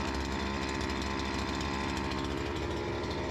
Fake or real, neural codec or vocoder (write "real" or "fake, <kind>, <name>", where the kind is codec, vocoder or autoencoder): real